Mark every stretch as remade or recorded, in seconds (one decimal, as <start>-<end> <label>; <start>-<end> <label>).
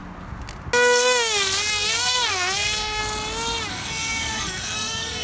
0.0-1.7 recorded; 1.7-3.0 remade; 3.0-3.7 recorded; 3.7-5.2 remade